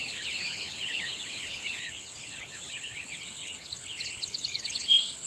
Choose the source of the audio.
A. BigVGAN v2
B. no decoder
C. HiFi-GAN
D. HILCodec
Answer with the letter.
D